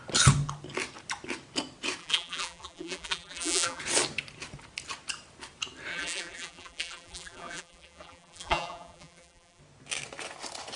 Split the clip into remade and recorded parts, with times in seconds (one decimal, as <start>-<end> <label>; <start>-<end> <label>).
0.0-2.0 recorded; 2.0-3.8 remade; 3.8-5.9 recorded; 5.9-9.6 remade; 9.6-10.8 recorded